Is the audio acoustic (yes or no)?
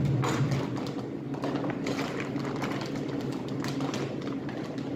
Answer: yes